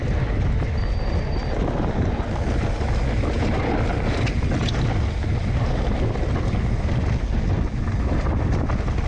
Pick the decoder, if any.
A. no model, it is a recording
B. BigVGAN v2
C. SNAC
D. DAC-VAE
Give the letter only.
A